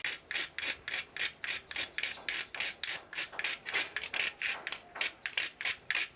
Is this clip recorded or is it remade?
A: recorded